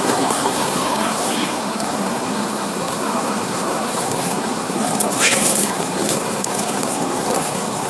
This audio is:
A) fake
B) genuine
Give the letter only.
A